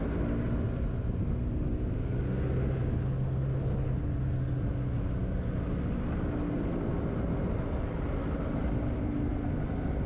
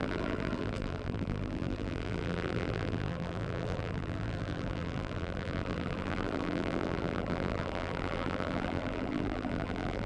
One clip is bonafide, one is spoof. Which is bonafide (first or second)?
first